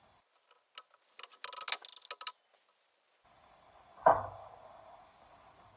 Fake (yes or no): no